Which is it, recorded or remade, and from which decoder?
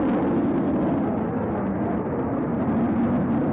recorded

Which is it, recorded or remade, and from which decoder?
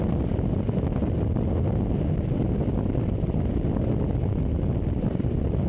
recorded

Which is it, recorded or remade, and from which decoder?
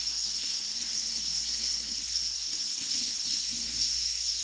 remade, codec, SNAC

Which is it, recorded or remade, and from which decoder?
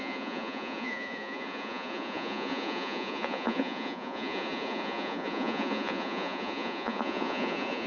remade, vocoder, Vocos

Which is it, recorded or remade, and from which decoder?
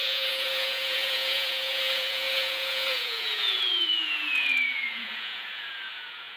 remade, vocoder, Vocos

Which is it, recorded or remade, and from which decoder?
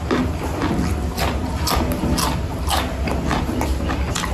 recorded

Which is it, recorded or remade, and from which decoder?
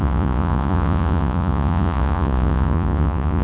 remade, vocoder, Vocos